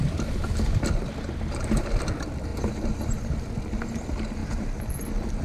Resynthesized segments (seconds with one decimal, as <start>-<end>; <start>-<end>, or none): 2.5-3.3; 4.4-5.0